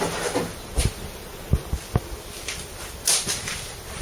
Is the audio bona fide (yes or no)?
yes